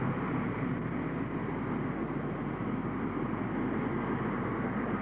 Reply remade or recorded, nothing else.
recorded